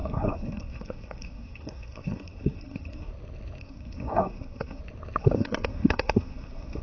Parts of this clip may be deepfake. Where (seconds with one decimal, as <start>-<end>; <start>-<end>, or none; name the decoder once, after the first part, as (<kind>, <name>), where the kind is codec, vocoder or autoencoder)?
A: 0.0-3.1 (codec, SNAC); 3.6-4.8; 5.2-6.8